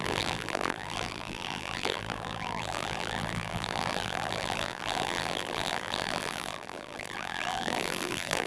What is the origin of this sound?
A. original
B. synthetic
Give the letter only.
B